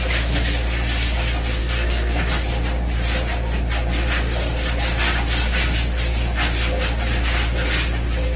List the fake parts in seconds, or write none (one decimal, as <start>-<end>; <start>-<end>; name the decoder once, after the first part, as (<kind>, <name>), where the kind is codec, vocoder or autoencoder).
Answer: 1.6-2.2 (codec, SNAC)